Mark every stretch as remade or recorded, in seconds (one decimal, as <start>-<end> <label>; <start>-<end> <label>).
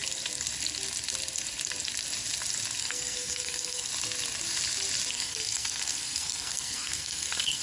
0.0-2.8 recorded; 2.8-3.9 remade; 3.9-5.1 recorded; 5.1-7.6 remade